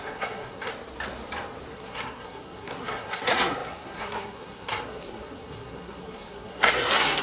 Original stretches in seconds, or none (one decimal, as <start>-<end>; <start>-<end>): 0.7-1.7